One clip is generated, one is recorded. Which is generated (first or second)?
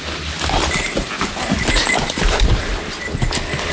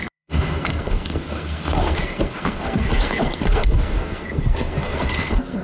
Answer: second